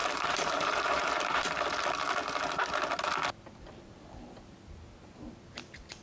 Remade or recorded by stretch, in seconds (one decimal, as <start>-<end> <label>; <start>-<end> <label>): 0.0-1.5 remade; 1.5-6.0 recorded